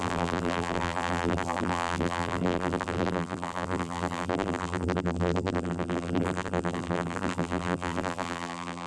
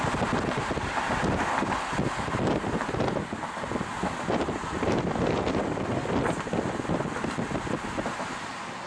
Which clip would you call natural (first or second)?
second